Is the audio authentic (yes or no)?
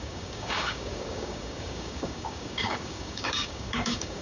no